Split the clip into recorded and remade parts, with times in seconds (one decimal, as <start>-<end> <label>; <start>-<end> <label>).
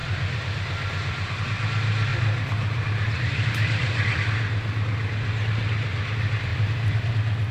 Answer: 0.0-1.4 remade; 1.4-2.1 recorded; 2.1-4.2 remade; 4.2-6.5 recorded; 6.5-7.1 remade; 7.1-7.5 recorded